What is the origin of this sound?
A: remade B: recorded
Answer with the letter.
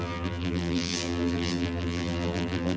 A